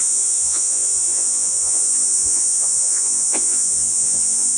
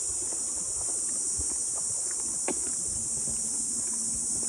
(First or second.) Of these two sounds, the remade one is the first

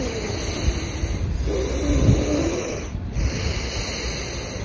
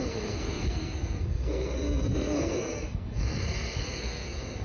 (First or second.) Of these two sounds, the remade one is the second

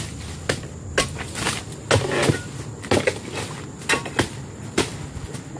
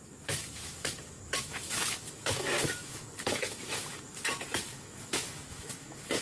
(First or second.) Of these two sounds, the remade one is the second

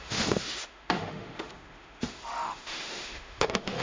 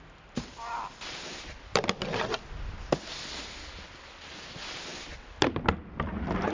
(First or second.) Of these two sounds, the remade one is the first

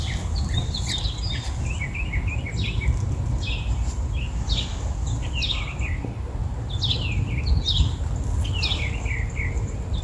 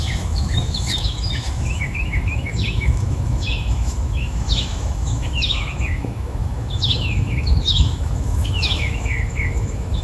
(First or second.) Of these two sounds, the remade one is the second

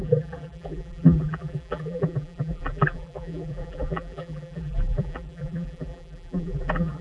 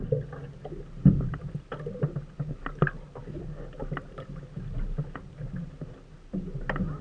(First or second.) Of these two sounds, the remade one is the first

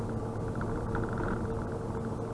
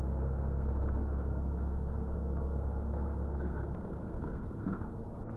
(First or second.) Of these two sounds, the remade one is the second